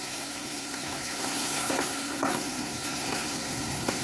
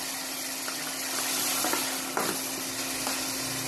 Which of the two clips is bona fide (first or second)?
second